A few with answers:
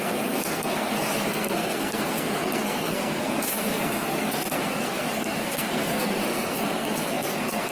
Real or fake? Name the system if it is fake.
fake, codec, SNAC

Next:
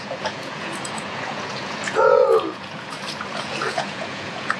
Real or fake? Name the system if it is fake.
fake, vocoder, Vocos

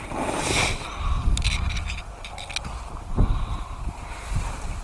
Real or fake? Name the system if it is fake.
real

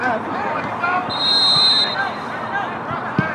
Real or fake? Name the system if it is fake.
fake, vocoder, BigVGAN v2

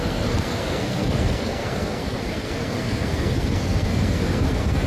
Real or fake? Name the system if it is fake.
fake, codec, SNAC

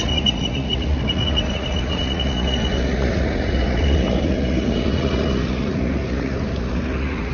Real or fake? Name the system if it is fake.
fake, vocoder, Vocos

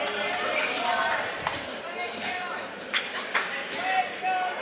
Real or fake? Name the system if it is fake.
fake, vocoder, BigVGAN v2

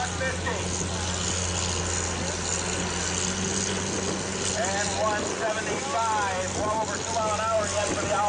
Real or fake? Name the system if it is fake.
real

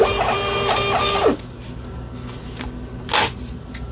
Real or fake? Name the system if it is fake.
real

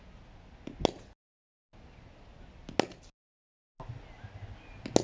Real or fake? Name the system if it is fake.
real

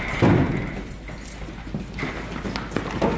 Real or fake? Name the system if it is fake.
real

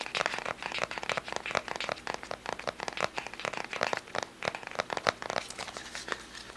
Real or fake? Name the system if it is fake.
real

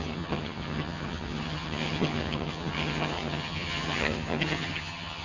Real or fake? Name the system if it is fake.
fake, vocoder, HiFi-GAN